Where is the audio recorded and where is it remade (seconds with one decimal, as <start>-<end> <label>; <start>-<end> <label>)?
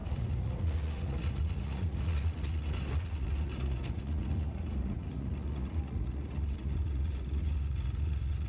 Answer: 0.0-8.5 remade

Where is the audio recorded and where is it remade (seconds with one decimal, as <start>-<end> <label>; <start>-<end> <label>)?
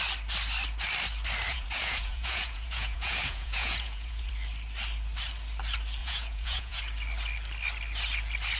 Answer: 0.0-1.5 recorded; 1.5-4.3 remade; 4.3-6.0 recorded; 6.0-6.8 remade; 6.8-8.6 recorded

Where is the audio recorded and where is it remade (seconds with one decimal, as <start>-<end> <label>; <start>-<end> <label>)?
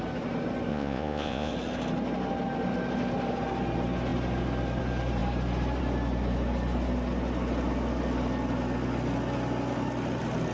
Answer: 0.0-0.7 recorded; 0.7-1.5 remade; 1.5-10.5 recorded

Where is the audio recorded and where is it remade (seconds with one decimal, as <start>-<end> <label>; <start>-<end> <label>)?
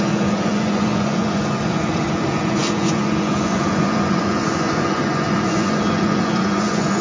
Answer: 0.0-7.0 remade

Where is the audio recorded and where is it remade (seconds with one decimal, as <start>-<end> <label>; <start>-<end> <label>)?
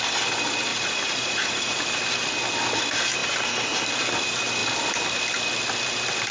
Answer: 0.0-0.7 recorded; 0.7-1.8 remade; 1.8-6.3 recorded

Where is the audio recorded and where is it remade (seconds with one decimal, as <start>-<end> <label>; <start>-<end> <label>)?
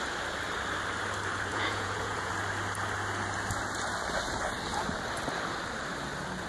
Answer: 0.0-1.5 recorded; 1.5-2.3 remade; 2.3-6.5 recorded